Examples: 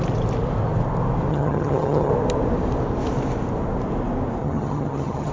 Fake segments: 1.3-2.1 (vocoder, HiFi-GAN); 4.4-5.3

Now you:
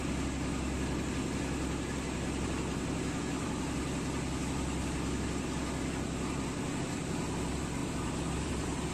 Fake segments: 7.8-8.9 (vocoder, BigVGAN v2)

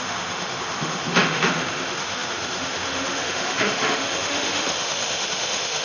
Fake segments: 0.0-5.8 (autoencoder, DAC-VAE)

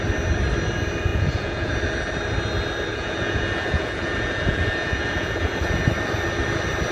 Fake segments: 1.1-1.7 (vocoder, Vocos); 2.9-5.9